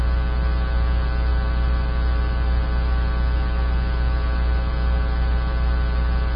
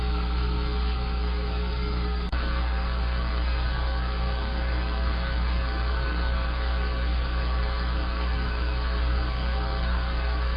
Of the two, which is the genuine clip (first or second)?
first